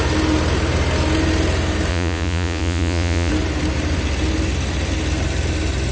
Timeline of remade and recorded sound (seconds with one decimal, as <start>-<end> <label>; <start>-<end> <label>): 0.0-1.9 recorded; 1.9-3.3 remade; 3.3-5.9 recorded